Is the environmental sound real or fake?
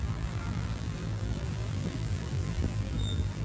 fake